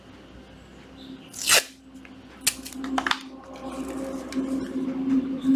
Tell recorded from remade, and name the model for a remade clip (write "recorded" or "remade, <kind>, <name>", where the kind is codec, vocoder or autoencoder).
recorded